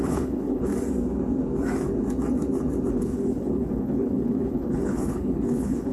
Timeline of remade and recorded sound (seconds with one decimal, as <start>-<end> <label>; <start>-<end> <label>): 0.0-0.7 remade; 0.7-2.9 recorded; 2.9-5.9 remade